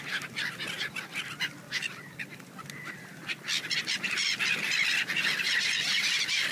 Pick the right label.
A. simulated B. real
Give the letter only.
B